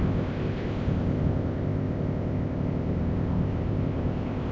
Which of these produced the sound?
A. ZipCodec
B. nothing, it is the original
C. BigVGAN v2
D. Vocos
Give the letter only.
A